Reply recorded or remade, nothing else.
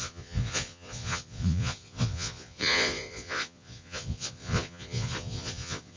remade